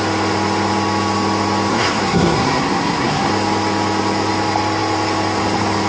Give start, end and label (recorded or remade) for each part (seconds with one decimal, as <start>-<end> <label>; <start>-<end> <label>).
0.0-1.7 recorded; 1.7-3.3 remade; 3.3-5.9 recorded